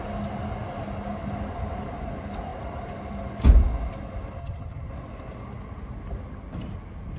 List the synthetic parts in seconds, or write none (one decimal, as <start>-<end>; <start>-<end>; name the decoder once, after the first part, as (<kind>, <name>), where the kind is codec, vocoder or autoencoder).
4.4-4.9 (vocoder, HiFi-GAN)